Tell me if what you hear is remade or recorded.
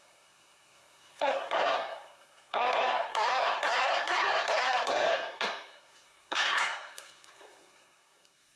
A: remade